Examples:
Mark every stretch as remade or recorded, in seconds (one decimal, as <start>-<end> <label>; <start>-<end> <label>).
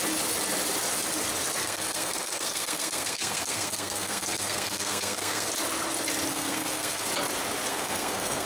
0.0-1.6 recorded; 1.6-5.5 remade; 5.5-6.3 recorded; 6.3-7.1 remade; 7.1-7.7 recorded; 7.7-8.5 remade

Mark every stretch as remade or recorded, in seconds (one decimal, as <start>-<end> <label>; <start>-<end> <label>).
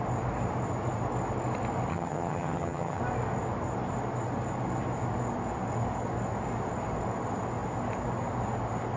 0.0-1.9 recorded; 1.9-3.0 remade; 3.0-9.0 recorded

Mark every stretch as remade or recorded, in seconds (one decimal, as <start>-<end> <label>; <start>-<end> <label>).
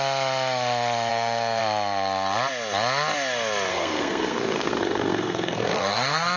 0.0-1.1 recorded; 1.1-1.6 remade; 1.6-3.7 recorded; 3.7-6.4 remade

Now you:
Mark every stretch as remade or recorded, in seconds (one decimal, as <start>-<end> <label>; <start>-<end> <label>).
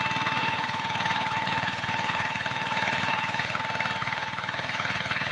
0.0-0.4 recorded; 0.4-3.6 remade; 3.6-4.0 recorded; 4.0-5.3 remade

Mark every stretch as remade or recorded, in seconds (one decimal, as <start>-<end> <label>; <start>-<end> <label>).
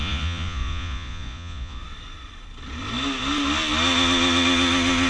0.0-1.8 remade; 1.8-5.1 recorded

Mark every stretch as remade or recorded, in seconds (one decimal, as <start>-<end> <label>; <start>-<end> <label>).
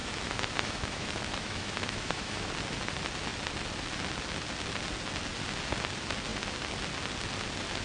0.0-2.5 remade; 2.5-7.8 recorded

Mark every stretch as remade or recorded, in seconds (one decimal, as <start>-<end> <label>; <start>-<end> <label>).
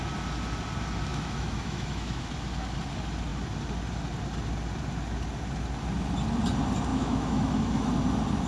0.0-1.1 recorded; 1.1-2.3 remade; 2.3-6.9 recorded; 6.9-7.9 remade; 7.9-8.5 recorded